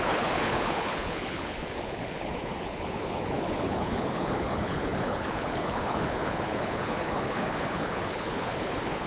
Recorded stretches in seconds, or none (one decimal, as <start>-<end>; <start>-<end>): none